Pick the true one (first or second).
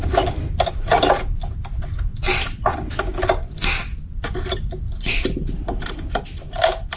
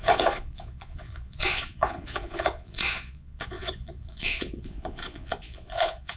first